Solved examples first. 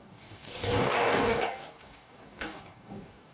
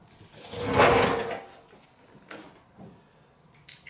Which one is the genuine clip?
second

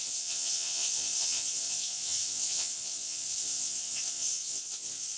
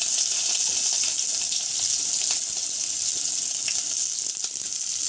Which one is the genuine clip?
second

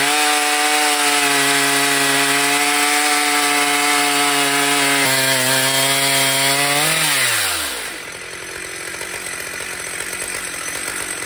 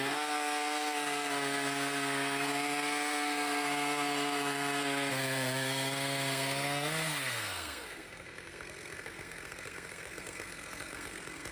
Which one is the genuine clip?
first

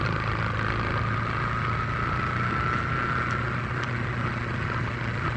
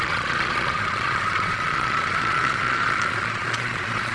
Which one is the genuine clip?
first